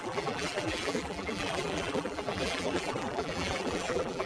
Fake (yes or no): yes